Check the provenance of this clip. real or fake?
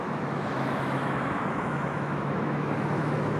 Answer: fake